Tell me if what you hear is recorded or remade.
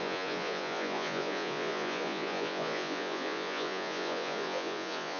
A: remade